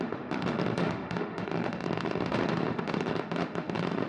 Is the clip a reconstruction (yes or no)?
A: yes